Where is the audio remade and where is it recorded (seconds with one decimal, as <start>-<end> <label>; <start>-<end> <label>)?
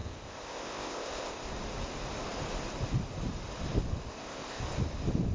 0.0-1.5 remade; 1.5-4.1 recorded; 4.1-4.6 remade; 4.6-5.3 recorded